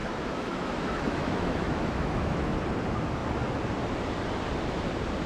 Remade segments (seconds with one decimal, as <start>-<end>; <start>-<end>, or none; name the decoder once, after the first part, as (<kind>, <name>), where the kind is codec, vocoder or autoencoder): 0.0-2.5 (autoencoder, DAC-VAE)